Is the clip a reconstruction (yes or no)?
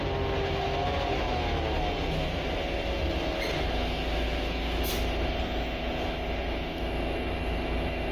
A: no